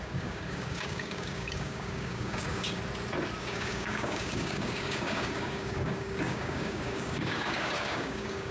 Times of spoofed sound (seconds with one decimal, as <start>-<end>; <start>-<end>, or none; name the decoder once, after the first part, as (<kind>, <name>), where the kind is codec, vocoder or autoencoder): 0.0-2.8 (codec, DAC); 3.4-8.5